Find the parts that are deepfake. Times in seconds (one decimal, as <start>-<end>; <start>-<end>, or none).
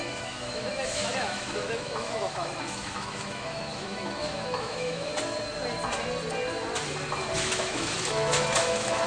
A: 0.0-5.1; 7.4-9.1